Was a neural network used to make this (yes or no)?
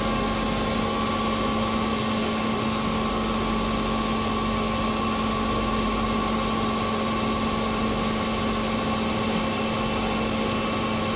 no